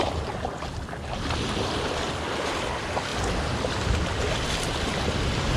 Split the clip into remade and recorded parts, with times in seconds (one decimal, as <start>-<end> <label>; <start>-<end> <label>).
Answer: 0.0-5.6 recorded